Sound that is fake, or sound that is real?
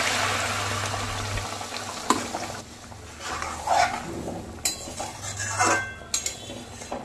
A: real